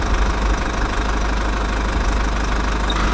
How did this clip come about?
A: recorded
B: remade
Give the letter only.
A